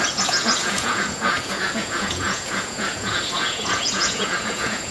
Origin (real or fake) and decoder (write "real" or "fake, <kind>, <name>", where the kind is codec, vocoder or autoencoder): fake, vocoder, Vocos